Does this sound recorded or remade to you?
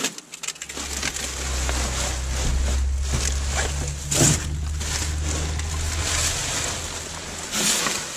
recorded